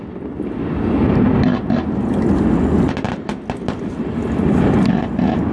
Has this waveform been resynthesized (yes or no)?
no